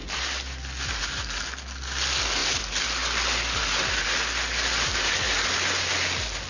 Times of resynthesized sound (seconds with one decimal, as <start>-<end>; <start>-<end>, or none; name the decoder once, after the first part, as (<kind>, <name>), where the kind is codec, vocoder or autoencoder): none